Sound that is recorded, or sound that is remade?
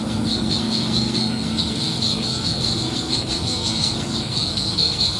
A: remade